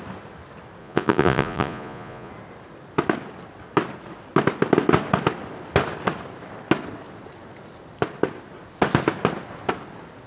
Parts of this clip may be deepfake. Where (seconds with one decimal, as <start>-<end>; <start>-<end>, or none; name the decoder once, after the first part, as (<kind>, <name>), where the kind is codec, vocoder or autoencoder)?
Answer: 0.8-2.3 (vocoder, Vocos)